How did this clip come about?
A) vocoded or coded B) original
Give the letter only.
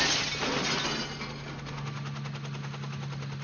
B